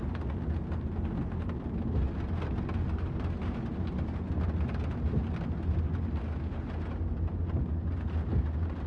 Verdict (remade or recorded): recorded